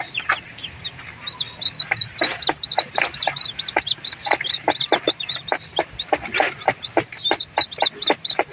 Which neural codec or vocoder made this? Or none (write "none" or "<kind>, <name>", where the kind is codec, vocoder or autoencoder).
none